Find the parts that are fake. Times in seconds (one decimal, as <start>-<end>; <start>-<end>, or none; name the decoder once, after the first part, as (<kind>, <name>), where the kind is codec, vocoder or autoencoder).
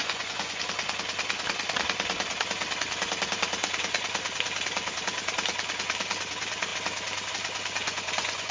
0.0-0.6 (vocoder, Vocos); 7.8-8.5